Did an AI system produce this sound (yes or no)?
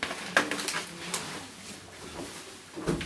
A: no